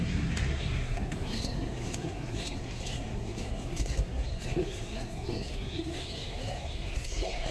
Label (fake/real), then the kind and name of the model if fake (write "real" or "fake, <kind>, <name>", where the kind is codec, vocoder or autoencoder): fake, codec, SNAC